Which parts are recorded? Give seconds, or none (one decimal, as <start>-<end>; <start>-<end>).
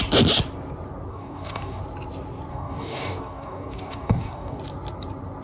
0.0-1.1; 1.8-2.5; 4.6-5.4